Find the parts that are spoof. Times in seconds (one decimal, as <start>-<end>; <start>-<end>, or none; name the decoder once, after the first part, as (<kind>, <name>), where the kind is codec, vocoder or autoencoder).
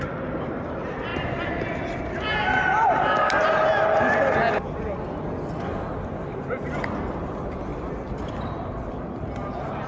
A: none